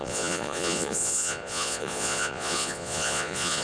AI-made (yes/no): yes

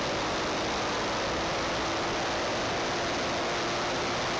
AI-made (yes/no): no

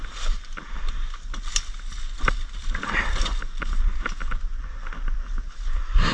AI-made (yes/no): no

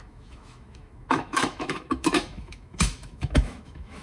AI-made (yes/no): yes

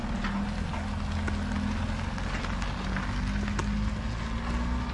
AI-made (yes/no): no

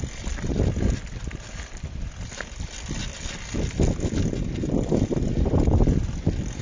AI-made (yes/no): no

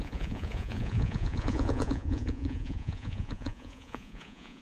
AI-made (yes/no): yes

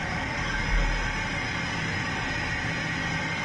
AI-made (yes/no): no